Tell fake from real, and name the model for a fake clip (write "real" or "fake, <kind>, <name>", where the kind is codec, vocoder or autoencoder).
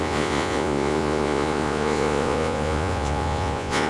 fake, vocoder, Vocos